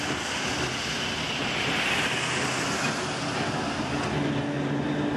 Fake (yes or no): no